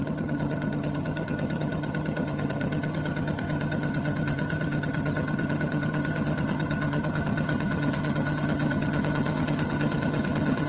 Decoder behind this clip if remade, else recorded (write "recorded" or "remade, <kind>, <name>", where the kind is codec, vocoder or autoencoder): remade, vocoder, HiFi-GAN